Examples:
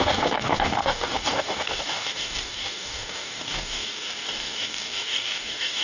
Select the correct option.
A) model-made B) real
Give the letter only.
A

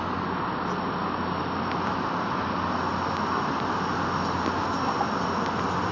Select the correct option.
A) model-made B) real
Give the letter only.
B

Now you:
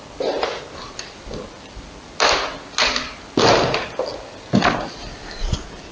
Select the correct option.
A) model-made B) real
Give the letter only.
B